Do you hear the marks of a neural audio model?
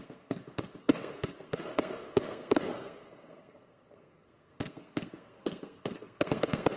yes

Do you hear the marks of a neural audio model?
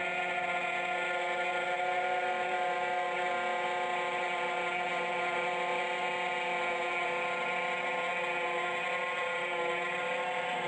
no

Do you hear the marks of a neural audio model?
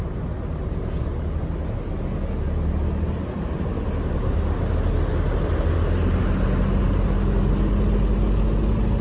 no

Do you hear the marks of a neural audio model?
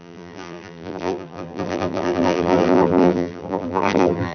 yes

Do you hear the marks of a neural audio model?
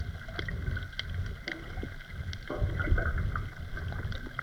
no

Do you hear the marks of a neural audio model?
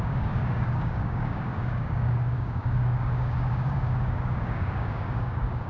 yes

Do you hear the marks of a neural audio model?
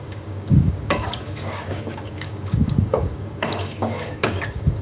yes